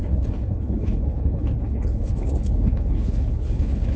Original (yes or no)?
no